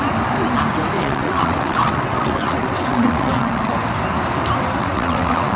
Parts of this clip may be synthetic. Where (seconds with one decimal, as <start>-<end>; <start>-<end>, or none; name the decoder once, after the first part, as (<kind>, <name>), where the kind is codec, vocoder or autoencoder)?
1.0-3.7 (vocoder, WaveNeXt); 4.8-5.6

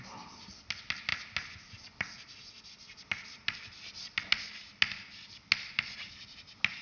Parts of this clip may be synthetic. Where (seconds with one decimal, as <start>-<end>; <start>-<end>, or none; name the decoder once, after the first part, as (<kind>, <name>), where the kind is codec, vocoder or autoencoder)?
none

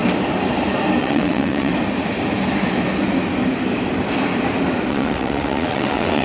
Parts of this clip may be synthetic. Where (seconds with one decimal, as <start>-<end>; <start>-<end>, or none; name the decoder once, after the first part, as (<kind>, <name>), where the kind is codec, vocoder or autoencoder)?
1.0-1.7 (vocoder, WaveNeXt); 4.9-6.2